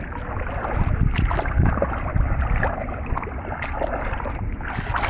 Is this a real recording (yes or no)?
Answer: yes